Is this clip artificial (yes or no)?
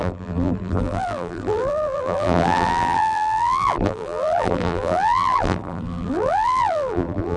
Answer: yes